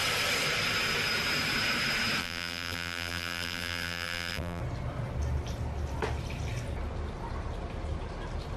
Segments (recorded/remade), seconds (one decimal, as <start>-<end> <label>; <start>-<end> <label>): 0.0-2.2 recorded; 2.2-4.6 remade; 4.6-8.6 recorded